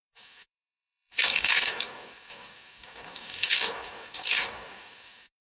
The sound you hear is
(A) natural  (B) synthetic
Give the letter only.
B